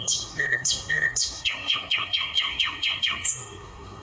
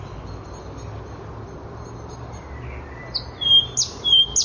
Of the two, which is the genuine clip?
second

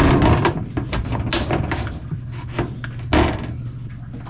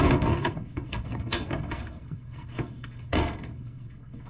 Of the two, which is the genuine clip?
first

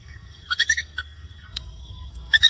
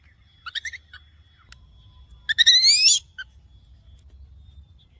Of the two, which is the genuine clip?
second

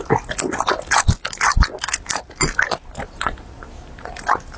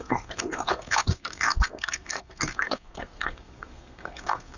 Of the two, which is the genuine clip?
first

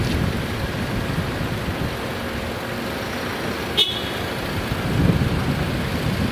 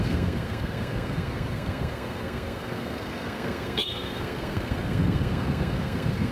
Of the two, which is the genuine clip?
first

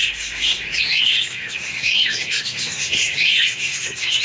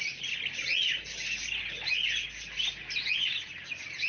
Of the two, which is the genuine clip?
second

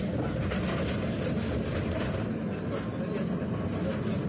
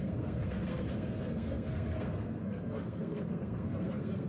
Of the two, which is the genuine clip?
first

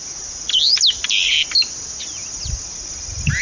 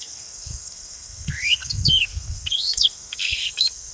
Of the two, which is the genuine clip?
first